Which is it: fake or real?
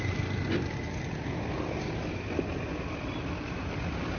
real